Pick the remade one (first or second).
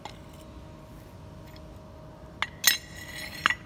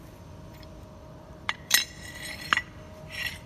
second